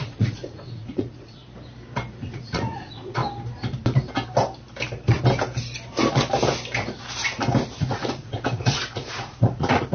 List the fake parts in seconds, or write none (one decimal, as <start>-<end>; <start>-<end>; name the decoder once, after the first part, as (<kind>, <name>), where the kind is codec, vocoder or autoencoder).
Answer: 0.0-1.4 (vocoder, Vocos); 2.2-3.2; 7.8-9.9